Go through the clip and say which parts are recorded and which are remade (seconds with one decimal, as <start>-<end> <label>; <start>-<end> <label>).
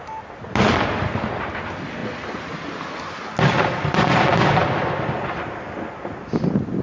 0.0-6.8 recorded